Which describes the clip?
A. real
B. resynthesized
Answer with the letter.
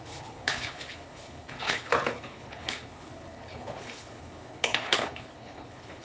B